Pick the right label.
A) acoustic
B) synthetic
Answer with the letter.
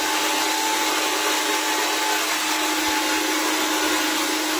A